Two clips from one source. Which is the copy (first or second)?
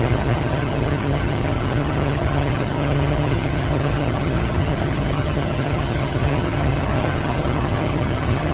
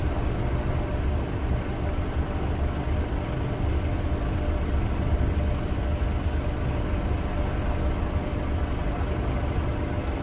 first